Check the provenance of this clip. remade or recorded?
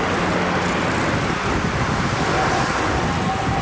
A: recorded